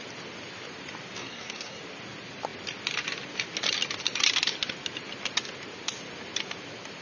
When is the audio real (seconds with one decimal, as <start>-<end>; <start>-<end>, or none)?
0.0-1.2; 1.8-7.0